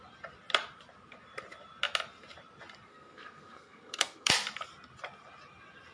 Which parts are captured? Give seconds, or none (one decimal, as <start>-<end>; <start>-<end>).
0.0-2.9; 4.3-5.9